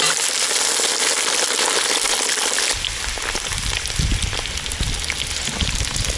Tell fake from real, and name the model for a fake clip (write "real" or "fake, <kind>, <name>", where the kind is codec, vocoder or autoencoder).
real